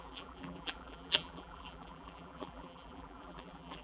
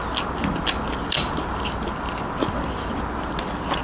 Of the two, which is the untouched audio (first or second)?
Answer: second